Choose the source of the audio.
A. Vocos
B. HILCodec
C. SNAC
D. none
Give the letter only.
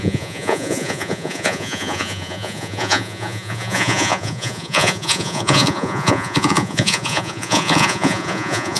A